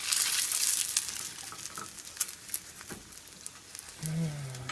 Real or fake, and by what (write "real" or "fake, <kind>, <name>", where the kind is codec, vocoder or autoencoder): real